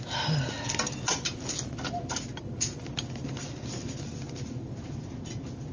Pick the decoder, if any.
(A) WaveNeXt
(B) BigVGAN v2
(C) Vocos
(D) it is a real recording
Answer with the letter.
D